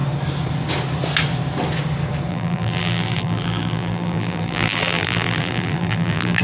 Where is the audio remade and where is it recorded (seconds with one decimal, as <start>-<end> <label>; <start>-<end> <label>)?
0.0-2.3 recorded; 2.3-6.4 remade